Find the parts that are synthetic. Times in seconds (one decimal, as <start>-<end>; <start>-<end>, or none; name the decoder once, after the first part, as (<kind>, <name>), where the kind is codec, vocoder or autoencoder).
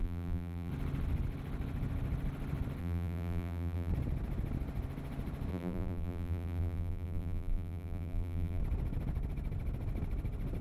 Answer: 0.0-0.7 (vocoder, BigVGAN v2); 2.8-3.9; 5.5-8.6